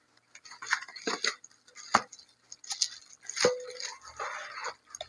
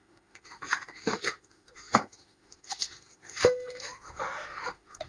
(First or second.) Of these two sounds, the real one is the first